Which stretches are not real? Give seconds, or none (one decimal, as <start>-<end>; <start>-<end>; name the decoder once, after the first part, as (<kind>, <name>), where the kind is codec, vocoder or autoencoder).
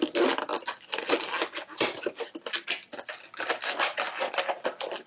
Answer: none